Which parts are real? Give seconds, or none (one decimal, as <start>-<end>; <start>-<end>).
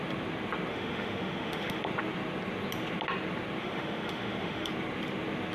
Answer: 0.0-0.7; 1.8-3.6; 4.7-5.5